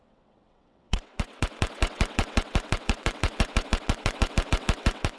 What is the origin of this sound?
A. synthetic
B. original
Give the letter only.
A